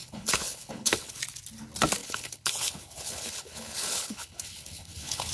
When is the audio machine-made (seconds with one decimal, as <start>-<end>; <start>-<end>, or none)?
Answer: 0.0-1.2; 2.0-5.3